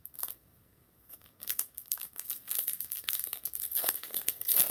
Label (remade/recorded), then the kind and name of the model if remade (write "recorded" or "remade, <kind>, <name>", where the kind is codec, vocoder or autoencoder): remade, codec, SNAC